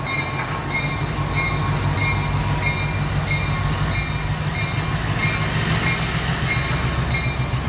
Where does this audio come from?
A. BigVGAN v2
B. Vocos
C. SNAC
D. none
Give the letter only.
D